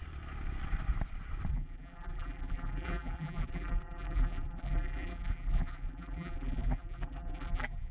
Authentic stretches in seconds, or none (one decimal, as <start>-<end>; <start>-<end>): 0.0-1.5